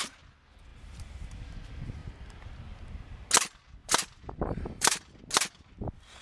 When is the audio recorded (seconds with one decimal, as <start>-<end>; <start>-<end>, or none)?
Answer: 0.0-3.8; 5.2-6.2